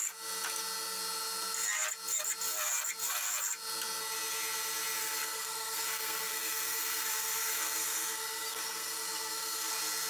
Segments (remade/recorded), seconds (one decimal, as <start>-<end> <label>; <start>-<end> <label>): 0.0-5.0 recorded; 5.0-9.7 remade; 9.7-10.1 recorded